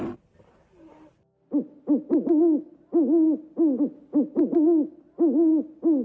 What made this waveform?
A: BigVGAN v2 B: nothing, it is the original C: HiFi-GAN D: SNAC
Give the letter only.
B